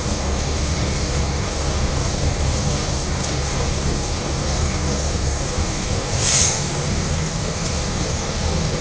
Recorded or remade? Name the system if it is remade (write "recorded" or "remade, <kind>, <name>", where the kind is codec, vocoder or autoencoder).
remade, codec, DAC